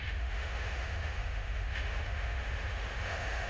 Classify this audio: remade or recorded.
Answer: remade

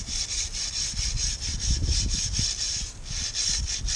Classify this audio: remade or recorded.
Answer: recorded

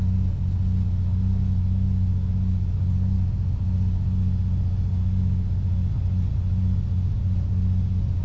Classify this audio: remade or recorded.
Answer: recorded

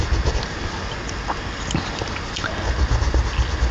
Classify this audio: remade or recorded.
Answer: recorded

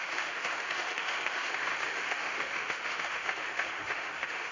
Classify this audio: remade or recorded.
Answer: remade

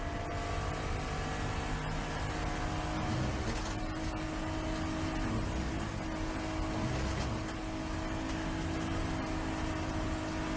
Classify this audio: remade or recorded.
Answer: recorded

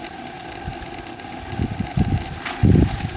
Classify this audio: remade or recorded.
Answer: recorded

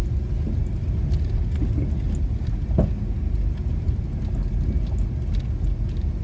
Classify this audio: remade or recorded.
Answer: recorded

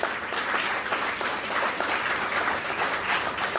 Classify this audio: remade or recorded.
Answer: recorded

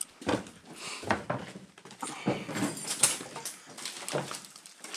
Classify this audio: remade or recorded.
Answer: recorded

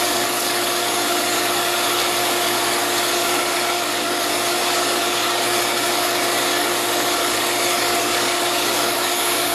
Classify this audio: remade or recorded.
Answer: remade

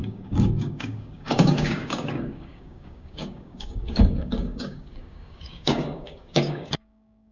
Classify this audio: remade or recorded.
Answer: remade